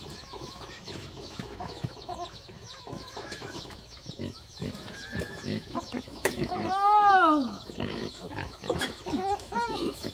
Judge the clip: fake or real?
fake